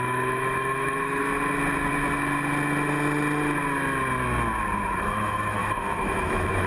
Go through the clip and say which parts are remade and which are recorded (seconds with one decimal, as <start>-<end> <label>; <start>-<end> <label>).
0.0-1.2 remade; 1.2-5.0 recorded; 5.0-6.7 remade